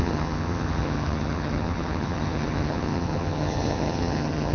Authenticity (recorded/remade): remade